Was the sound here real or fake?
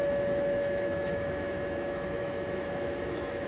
fake